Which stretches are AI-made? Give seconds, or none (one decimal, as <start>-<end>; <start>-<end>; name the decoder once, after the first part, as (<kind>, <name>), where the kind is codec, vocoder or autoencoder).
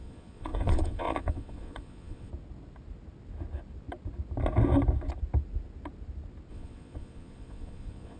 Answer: 0.0-2.3 (vocoder, Vocos); 6.5-8.2